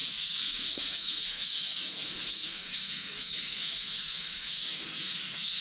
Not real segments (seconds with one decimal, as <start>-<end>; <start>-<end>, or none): 0.0-5.6